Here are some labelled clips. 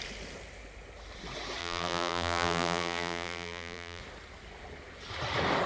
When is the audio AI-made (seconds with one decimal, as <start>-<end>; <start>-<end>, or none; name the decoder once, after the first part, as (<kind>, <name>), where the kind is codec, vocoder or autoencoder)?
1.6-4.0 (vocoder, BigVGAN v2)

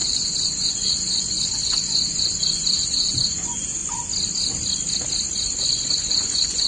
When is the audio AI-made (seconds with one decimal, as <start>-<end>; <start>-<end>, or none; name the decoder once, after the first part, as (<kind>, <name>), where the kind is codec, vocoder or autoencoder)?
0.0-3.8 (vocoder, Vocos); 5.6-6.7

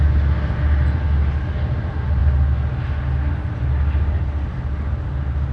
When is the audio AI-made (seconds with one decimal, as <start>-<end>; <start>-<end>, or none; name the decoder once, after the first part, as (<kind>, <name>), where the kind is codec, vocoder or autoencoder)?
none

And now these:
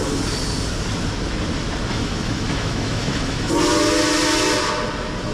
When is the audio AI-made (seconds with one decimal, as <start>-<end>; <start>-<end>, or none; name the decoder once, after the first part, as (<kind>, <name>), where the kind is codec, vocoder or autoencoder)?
1.9-3.5 (autoencoder, DAC-VAE)

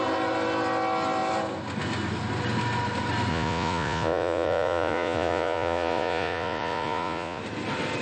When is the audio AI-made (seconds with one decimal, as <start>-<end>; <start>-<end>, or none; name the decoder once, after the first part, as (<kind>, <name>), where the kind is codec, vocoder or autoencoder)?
3.3-7.4 (vocoder, Vocos)

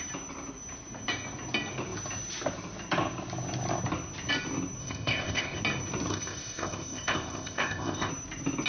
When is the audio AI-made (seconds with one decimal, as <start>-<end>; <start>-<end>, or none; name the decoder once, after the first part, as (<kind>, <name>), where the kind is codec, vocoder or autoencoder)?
4.8-5.6 (codec, ZipCodec); 6.1-8.1